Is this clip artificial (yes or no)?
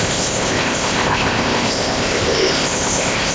yes